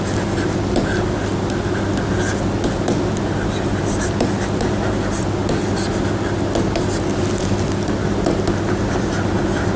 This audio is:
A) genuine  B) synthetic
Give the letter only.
A